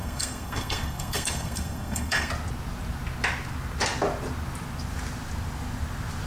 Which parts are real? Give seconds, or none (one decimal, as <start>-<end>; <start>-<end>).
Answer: 2.3-6.3